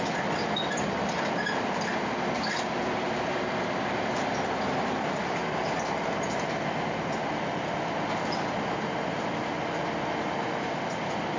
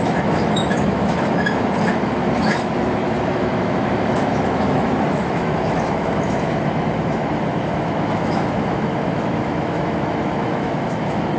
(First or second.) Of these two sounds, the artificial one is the second